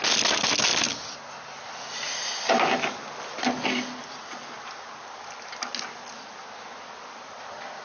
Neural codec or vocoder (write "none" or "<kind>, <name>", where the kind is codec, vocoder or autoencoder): none